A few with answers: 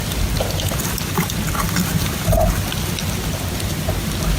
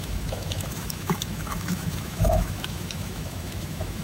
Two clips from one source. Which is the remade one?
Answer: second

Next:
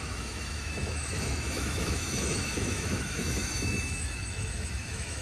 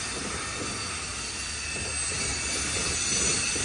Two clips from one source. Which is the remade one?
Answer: first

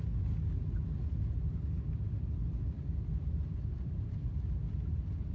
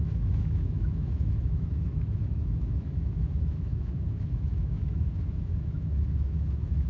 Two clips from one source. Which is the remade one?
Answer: second